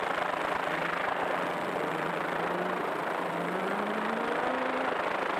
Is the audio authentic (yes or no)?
yes